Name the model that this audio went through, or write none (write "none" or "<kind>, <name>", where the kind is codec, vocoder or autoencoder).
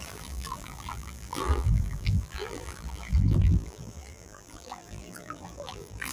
vocoder, BigVGAN v2